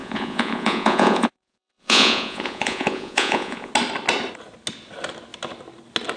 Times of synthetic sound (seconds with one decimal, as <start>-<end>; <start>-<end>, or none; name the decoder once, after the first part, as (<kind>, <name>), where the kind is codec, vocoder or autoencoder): 0.0-3.7 (vocoder, Vocos)